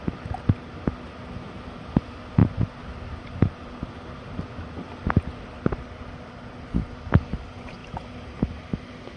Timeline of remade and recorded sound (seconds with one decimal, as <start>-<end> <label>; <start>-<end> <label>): 0.0-9.2 recorded